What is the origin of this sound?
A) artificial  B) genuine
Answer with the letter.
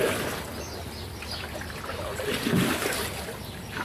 B